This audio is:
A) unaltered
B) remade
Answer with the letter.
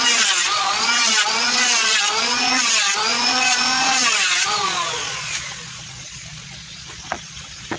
B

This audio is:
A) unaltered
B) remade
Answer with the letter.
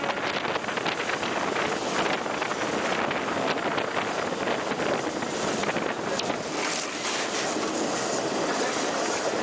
A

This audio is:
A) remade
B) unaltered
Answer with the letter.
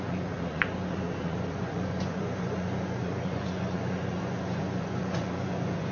A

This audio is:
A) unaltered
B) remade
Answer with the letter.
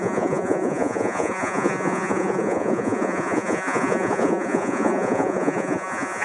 B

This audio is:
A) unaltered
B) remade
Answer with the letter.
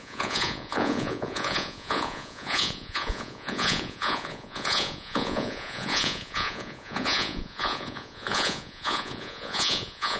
B